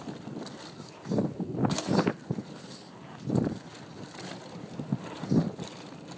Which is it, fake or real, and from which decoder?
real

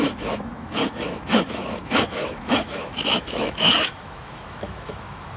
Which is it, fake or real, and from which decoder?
fake, autoencoder, DAC-VAE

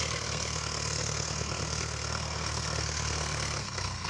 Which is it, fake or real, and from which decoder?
fake, codec, SNAC